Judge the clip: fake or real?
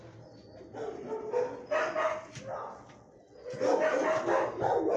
real